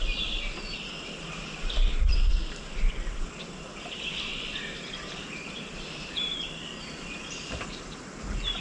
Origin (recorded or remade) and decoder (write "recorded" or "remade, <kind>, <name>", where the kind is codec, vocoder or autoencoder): remade, vocoder, BigVGAN v2